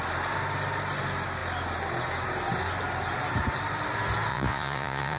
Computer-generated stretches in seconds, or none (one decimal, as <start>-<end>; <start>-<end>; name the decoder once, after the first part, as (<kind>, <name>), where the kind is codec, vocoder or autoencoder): 4.3-5.2 (vocoder, Vocos)